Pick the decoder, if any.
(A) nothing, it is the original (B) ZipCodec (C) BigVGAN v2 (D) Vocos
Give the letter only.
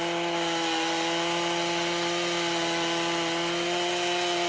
A